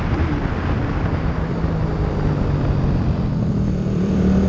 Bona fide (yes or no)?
no